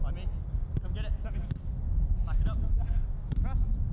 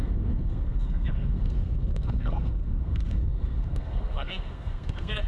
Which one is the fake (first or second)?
second